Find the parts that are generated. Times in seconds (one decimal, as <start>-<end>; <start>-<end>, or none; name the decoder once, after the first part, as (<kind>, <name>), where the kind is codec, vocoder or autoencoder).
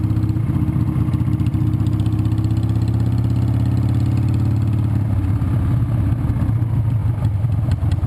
none